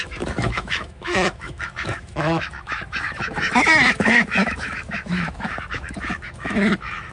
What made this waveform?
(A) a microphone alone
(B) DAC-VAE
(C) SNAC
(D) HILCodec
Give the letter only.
B